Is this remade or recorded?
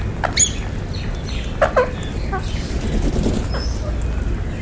recorded